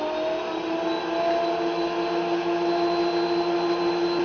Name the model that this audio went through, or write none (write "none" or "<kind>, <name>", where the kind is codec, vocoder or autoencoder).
none